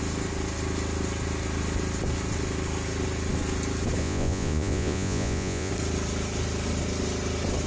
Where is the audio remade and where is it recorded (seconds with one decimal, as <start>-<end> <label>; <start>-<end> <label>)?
0.0-4.0 recorded; 4.0-5.7 remade; 5.7-7.7 recorded